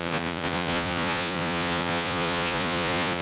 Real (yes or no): no